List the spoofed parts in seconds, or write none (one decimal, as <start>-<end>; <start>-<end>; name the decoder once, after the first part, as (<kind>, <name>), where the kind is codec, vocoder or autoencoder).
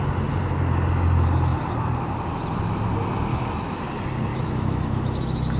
3.3-3.8 (autoencoder, DAC-VAE); 4.3-5.6